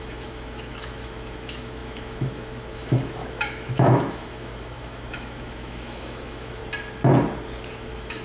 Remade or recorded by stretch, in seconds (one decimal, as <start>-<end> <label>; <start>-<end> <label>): 0.0-6.6 remade; 6.6-7.7 recorded; 7.7-8.2 remade

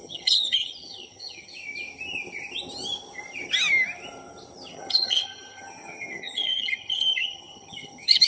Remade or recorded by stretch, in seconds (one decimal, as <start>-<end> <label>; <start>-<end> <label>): 0.0-1.5 remade; 1.5-4.7 recorded; 4.7-8.3 remade

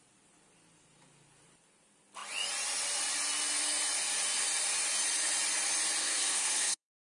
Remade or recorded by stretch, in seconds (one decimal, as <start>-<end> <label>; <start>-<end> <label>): 0.0-6.0 recorded; 6.0-7.1 remade

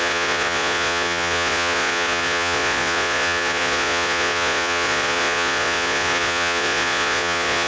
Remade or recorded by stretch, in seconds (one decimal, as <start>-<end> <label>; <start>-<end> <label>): 0.0-7.7 remade

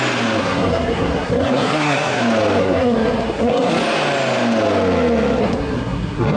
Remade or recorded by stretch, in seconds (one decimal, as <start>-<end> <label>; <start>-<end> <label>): 0.0-0.4 recorded; 0.4-2.2 remade; 2.2-2.6 recorded; 2.6-3.7 remade; 3.7-5.4 recorded; 5.4-6.4 remade

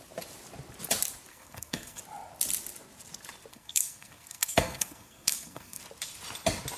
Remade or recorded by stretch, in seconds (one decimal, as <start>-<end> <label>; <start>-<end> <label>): 0.0-1.3 recorded; 1.3-2.0 remade; 2.0-3.5 recorded; 3.5-5.8 remade; 5.8-6.8 recorded

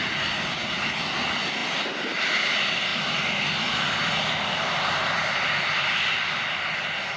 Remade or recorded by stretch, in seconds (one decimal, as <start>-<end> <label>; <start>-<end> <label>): 0.0-7.2 recorded

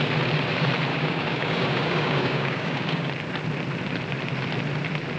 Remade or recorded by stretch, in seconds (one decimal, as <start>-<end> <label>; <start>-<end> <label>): 0.0-0.9 recorded; 0.9-3.1 remade; 3.1-5.2 recorded